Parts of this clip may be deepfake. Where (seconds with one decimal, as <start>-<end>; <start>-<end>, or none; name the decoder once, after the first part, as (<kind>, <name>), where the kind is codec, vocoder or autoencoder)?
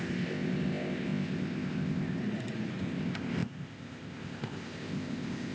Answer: 0.0-2.2 (codec, ZipCodec); 2.8-5.5